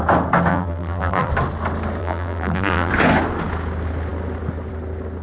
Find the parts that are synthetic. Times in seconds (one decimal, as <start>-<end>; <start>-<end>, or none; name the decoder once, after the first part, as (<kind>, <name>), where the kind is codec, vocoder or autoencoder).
0.5-1.3 (vocoder, BigVGAN v2); 2.0-2.9